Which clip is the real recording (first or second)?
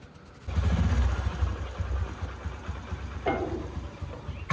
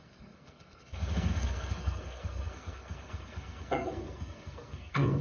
first